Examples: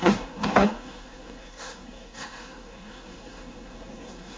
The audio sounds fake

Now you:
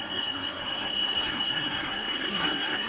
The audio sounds fake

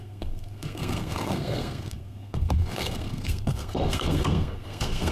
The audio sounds fake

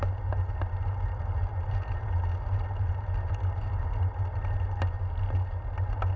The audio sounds real